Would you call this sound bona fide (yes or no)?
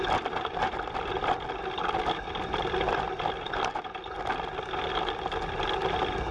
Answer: yes